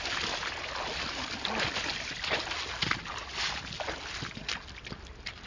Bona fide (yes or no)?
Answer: yes